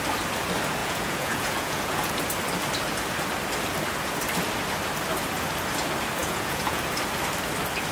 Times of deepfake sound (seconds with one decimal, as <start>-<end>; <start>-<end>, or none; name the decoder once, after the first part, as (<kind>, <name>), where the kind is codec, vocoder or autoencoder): 0.8-2.2 (vocoder, Vocos); 6.2-6.8